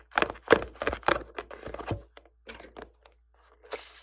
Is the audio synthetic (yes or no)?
no